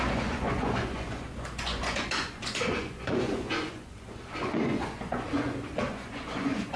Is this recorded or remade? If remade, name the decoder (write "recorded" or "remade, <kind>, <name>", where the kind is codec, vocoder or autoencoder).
remade, vocoder, Vocos